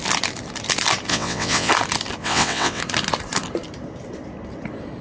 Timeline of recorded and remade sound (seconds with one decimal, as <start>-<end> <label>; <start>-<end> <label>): 0.0-1.1 recorded; 1.1-1.7 remade; 1.7-2.2 recorded; 2.2-2.8 remade; 2.8-5.0 recorded